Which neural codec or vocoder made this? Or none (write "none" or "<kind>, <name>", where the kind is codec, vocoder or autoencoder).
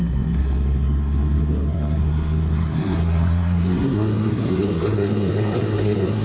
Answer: codec, SNAC